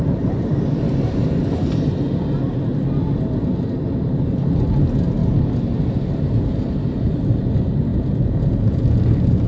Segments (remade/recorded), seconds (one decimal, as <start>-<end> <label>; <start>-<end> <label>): 0.0-7.9 recorded; 7.9-8.8 remade; 8.8-9.5 recorded